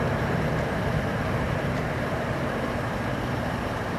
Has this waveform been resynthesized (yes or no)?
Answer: yes